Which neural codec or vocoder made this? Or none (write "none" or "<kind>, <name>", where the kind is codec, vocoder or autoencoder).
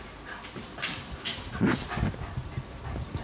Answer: none